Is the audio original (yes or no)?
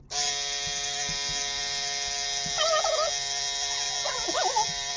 yes